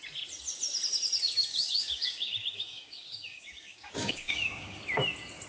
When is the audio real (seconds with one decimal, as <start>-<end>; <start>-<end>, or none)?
0.0-1.5; 4.8-5.5